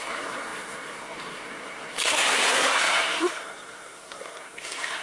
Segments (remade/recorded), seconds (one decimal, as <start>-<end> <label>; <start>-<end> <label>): 0.0-5.0 remade